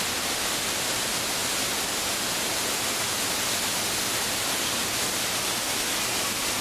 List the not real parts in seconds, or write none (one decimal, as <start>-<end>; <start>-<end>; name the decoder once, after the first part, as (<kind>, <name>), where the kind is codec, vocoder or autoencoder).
1.4-3.8 (vocoder, BigVGAN v2)